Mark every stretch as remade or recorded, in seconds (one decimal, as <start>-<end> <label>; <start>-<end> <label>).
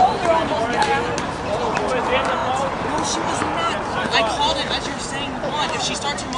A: 0.0-6.4 recorded